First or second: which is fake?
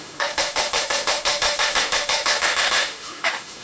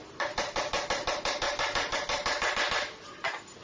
first